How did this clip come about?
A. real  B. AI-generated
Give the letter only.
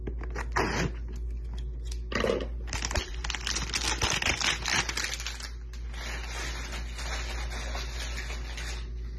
A